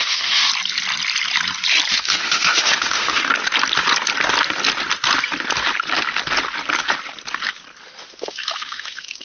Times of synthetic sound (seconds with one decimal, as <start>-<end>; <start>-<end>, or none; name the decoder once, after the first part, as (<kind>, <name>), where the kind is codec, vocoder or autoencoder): 0.0-0.5 (autoencoder, DAC-VAE); 1.9-3.3; 8.0-9.2